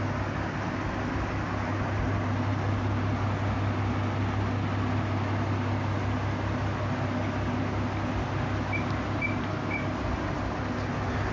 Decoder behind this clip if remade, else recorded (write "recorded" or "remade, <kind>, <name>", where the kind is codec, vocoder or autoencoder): recorded